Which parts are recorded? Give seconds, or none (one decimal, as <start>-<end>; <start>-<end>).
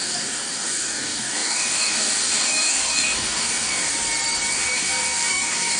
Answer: 3.9-4.5